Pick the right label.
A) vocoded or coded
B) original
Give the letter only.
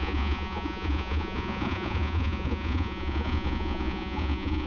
A